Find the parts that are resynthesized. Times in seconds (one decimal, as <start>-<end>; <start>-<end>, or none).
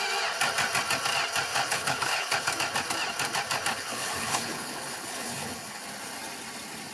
1.5-2.5; 3.7-5.8